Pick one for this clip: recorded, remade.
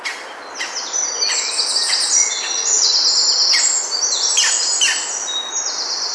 recorded